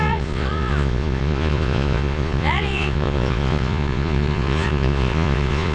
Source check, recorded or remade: remade